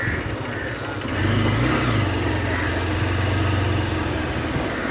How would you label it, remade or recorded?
recorded